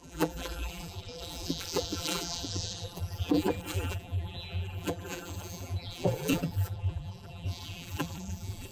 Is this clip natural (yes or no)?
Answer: no